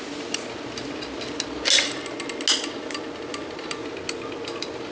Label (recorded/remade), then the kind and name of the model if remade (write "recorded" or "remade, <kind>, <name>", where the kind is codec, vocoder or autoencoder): recorded